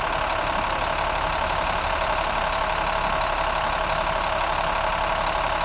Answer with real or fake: real